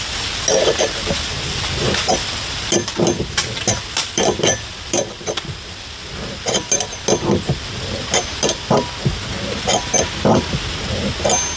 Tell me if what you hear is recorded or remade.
recorded